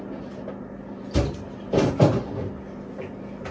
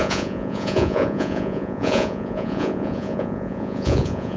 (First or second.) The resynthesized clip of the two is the second